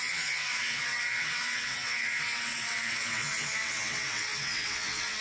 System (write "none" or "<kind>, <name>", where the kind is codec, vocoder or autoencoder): vocoder, WaveNeXt